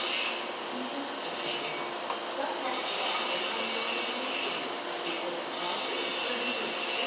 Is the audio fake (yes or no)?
no